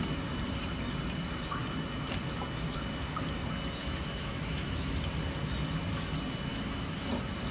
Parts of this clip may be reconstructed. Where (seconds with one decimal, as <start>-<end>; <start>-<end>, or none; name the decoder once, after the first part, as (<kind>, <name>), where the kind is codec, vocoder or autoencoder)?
3.8-5.0 (autoencoder, DAC-VAE); 6.5-7.1